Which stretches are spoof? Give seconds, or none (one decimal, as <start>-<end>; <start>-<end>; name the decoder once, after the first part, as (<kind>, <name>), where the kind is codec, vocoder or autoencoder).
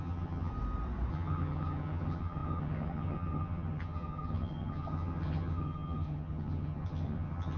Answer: 0.0-0.5 (vocoder, HiFi-GAN); 1.1-7.6